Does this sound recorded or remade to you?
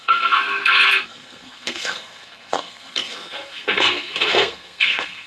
remade